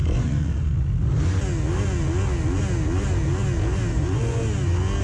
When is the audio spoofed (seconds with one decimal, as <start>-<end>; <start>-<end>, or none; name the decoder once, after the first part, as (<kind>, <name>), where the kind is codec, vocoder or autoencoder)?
0.0-0.7 (vocoder, Vocos); 3.9-4.4